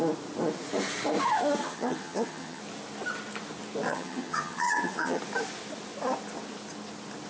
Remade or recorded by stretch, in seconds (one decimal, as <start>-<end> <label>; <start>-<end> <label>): 0.0-1.6 recorded; 1.6-2.6 remade; 2.6-3.9 recorded; 3.9-5.2 remade; 5.2-7.3 recorded